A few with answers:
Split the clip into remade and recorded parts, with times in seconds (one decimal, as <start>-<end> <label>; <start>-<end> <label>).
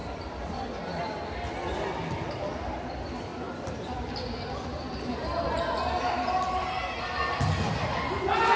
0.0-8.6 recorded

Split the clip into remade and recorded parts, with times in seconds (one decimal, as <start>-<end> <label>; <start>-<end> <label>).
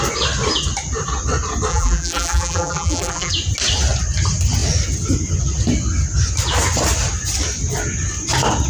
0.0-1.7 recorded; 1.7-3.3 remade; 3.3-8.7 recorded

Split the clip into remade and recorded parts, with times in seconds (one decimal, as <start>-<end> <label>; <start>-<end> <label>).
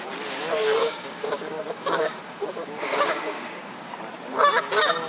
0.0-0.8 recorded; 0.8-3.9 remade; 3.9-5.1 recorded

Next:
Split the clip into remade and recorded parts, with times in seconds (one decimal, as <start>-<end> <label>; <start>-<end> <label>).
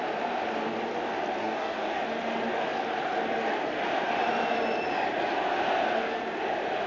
0.0-1.4 recorded; 1.4-2.0 remade; 2.0-6.9 recorded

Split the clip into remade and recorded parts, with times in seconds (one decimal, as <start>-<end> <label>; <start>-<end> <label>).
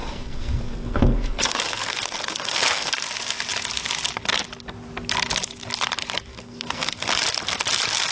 0.0-2.9 remade; 2.9-6.3 recorded; 6.3-7.1 remade; 7.1-8.1 recorded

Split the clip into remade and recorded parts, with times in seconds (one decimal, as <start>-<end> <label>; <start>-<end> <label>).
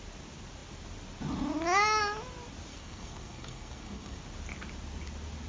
0.0-2.7 recorded; 2.7-4.2 remade; 4.2-5.5 recorded